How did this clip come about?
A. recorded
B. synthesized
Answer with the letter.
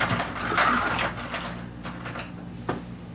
A